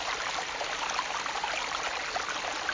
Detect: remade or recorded recorded